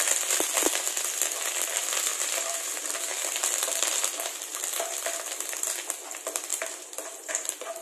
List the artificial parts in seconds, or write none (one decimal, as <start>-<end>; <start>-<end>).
2.1-5.6; 6.5-7.3

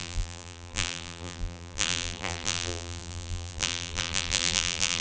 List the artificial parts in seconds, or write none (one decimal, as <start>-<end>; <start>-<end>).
0.0-5.0

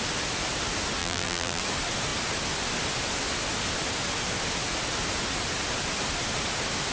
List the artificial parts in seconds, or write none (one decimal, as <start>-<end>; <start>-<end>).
1.0-1.6